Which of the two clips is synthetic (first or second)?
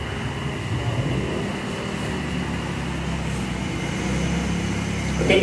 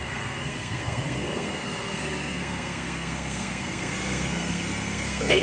second